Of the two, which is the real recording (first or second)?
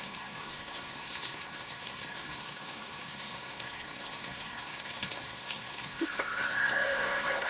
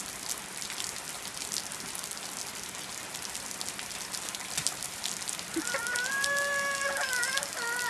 second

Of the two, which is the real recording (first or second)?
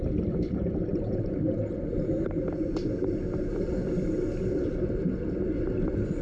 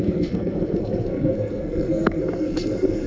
first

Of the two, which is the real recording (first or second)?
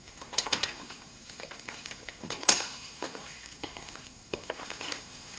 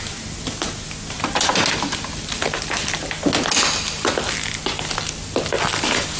second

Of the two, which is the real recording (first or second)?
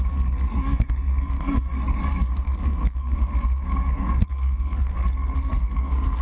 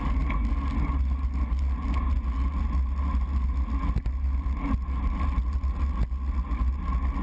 second